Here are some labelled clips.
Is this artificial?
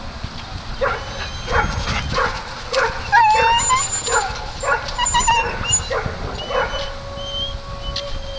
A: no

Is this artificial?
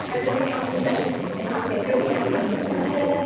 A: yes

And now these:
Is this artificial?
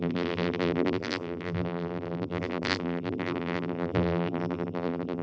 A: yes